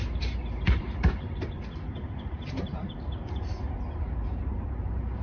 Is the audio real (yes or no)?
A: no